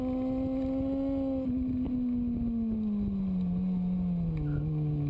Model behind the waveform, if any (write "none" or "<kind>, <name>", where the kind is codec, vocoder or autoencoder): none